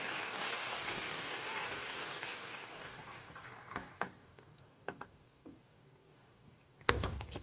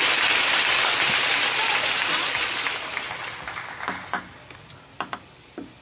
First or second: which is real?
second